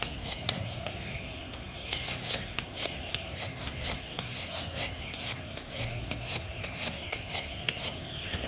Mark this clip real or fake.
fake